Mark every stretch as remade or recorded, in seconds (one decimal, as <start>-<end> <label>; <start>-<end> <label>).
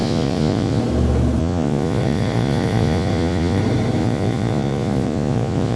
0.0-0.8 remade; 0.8-1.4 recorded; 1.4-3.6 remade; 3.6-4.0 recorded; 4.0-5.8 remade